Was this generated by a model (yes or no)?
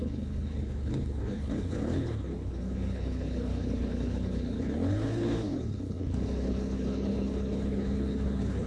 yes